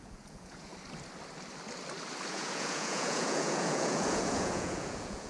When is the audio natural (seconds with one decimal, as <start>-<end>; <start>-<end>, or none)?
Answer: 0.7-2.3